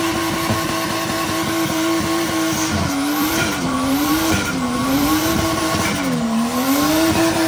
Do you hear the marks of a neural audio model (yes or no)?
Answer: yes